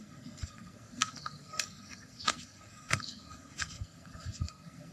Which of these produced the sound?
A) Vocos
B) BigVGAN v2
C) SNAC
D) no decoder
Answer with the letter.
C